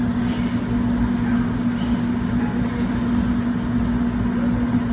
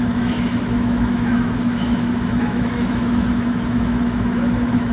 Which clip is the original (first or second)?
first